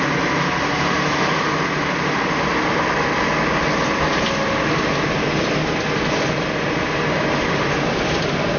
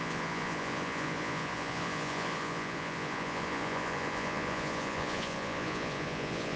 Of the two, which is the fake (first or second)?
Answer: second